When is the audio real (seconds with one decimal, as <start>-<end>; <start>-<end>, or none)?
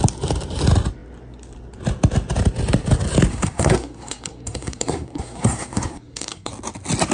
0.0-3.3; 6.5-7.1